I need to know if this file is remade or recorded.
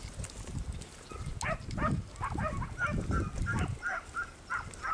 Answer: recorded